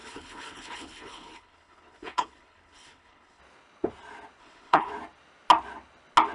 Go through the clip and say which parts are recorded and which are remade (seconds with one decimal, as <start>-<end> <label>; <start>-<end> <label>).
0.0-3.4 remade; 3.4-4.4 recorded; 4.4-4.9 remade; 4.9-6.3 recorded